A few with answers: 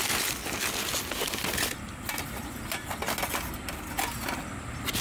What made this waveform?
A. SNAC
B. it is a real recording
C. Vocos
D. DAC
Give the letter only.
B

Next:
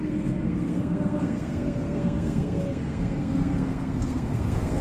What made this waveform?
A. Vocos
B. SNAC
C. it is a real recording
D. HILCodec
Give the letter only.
B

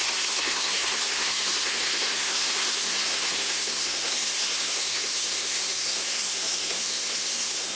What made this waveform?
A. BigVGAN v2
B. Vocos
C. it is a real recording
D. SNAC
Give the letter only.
D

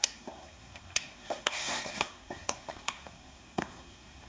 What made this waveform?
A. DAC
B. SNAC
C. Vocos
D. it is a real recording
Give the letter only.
B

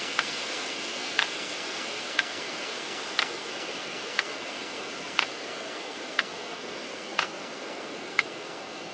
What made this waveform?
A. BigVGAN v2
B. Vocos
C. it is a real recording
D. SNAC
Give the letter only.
D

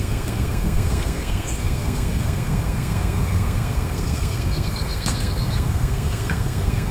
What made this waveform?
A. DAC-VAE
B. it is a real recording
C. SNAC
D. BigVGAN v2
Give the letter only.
C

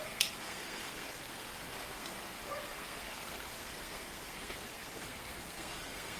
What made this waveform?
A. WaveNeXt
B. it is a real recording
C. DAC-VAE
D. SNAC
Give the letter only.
D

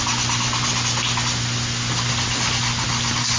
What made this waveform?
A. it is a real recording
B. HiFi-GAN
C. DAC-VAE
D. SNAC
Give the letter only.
A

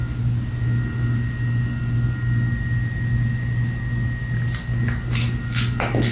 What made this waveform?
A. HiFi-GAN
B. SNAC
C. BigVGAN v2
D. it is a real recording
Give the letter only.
D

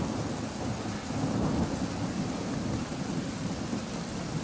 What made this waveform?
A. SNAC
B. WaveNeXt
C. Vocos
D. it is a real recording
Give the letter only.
D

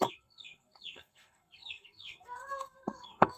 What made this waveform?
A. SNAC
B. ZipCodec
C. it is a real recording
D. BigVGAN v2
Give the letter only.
A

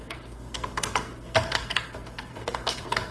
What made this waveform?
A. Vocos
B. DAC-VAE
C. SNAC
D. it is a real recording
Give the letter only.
C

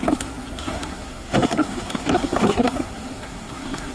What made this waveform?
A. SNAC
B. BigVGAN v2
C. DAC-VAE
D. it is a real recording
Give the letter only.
A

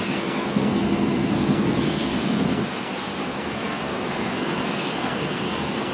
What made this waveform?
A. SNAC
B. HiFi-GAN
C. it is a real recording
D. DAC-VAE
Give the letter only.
A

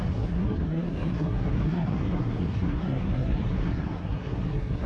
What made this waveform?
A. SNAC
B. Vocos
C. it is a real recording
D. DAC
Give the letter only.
A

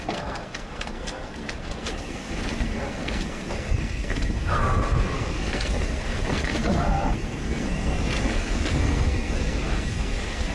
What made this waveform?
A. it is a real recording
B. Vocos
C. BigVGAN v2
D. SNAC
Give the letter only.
D